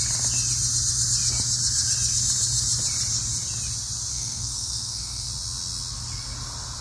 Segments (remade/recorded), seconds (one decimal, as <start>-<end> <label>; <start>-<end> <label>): 0.0-4.1 recorded; 4.1-5.3 remade; 5.3-6.8 recorded